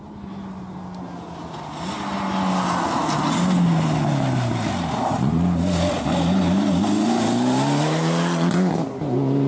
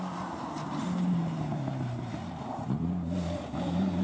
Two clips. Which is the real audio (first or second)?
first